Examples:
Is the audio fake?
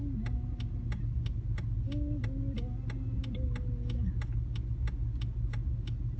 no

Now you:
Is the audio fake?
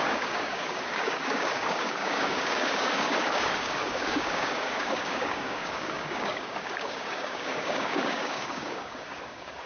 yes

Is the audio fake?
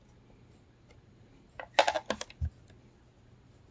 no